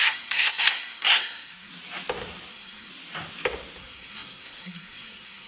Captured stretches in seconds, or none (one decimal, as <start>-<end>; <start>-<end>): 1.7-2.5; 2.9-3.8